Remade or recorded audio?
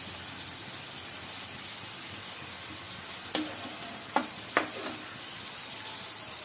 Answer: recorded